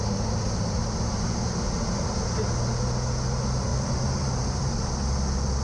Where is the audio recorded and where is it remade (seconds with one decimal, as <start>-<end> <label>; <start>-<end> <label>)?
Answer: 0.0-0.4 recorded; 0.4-2.1 remade; 2.1-3.7 recorded; 3.7-4.9 remade; 4.9-5.6 recorded